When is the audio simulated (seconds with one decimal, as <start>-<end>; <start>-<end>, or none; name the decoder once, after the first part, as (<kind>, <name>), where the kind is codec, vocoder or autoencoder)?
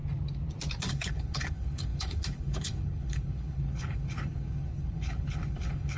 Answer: 0.9-6.0 (codec, HILCodec)